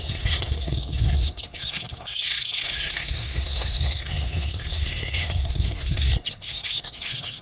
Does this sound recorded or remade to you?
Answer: remade